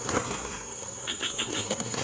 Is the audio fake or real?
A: fake